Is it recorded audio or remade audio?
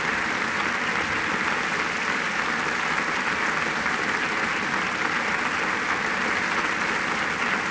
recorded